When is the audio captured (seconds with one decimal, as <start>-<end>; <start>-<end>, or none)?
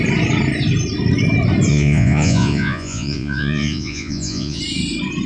0.0-1.7; 4.6-5.3